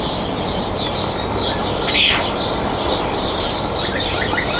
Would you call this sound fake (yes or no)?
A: yes